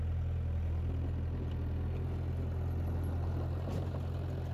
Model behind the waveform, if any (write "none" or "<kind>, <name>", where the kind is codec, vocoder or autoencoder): none